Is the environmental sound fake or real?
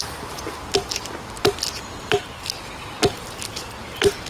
real